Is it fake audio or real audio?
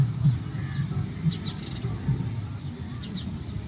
real